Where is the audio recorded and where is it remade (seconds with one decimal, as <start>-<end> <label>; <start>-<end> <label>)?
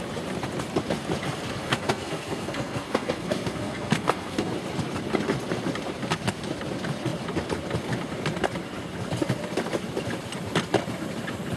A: 0.0-1.6 recorded; 1.6-4.5 remade; 4.5-11.6 recorded